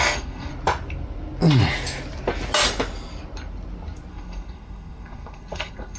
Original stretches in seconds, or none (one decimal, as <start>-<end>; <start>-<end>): 0.5-4.1